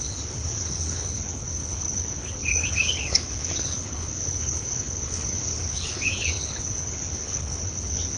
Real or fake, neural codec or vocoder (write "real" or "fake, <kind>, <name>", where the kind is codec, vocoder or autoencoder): fake, codec, HILCodec